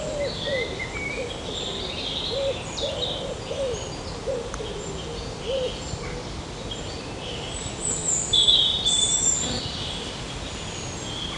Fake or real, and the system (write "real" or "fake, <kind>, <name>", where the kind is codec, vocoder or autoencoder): fake, vocoder, BigVGAN v2